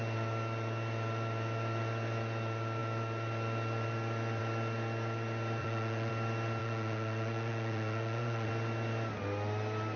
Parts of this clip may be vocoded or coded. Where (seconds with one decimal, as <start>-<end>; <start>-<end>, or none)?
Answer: 5.6-6.1; 6.6-8.5